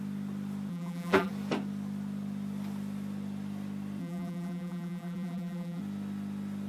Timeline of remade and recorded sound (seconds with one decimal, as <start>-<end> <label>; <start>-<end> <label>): 0.0-0.7 recorded; 0.7-1.3 remade; 1.3-4.0 recorded; 4.0-5.8 remade; 5.8-6.7 recorded